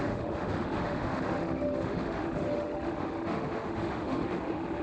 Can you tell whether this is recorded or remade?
remade